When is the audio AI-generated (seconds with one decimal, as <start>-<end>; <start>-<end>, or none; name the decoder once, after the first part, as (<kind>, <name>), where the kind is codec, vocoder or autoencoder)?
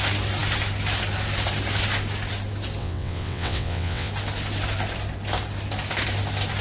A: 2.8-4.1 (vocoder, WaveNeXt)